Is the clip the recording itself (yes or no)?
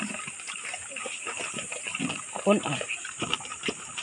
yes